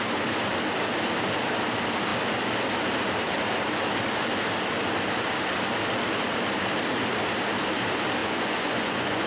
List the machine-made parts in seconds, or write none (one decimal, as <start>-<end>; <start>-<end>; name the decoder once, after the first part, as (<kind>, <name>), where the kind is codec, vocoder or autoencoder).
8.2-9.3 (vocoder, Vocos)